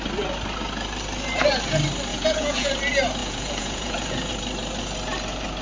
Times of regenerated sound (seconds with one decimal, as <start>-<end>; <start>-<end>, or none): 2.1-2.7; 3.2-4.3